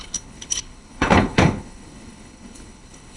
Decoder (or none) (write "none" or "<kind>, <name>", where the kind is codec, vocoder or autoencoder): codec, HILCodec